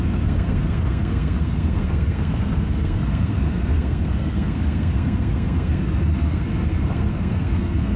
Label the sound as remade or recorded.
remade